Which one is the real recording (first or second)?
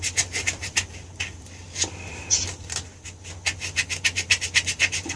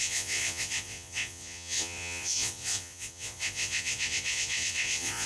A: first